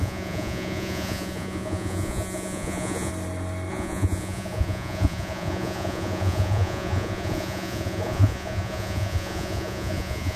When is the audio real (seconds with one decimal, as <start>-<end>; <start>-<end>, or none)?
3.1-3.7